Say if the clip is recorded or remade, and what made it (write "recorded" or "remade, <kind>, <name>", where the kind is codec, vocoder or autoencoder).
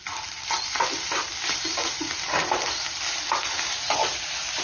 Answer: recorded